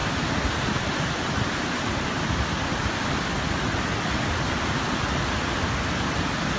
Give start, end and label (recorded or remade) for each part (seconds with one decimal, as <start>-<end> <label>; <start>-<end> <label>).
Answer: 0.0-6.6 recorded